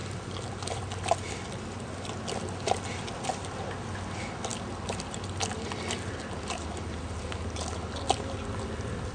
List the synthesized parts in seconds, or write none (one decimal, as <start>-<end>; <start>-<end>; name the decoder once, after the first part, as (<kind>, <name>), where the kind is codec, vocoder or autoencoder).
none